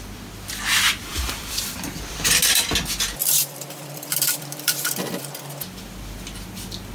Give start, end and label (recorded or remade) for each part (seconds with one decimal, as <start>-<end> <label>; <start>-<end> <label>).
0.0-1.1 recorded; 1.1-2.7 remade; 2.7-3.2 recorded; 3.2-5.2 remade; 5.2-6.9 recorded